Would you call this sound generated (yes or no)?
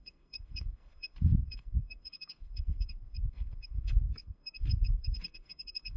yes